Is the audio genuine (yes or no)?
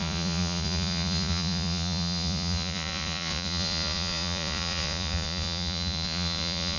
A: no